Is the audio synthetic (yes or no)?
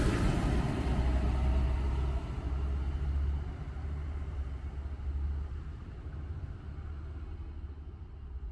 no